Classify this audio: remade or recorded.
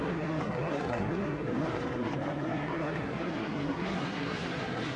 remade